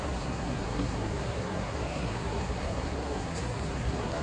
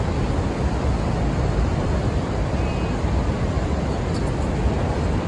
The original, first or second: second